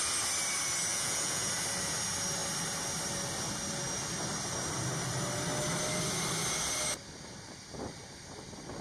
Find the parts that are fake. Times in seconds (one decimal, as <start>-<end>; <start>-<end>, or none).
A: 0.9-1.5